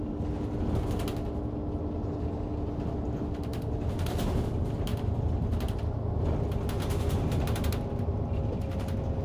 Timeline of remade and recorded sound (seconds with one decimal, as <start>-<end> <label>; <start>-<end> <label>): 0.0-9.2 recorded